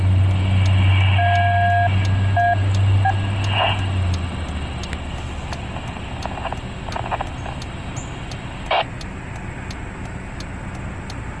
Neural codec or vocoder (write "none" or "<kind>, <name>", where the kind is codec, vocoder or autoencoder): none